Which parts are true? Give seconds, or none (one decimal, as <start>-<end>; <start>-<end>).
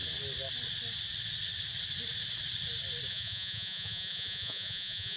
0.0-3.1